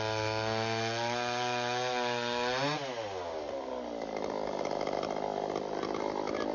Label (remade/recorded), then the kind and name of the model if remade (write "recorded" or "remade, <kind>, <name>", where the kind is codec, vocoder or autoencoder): recorded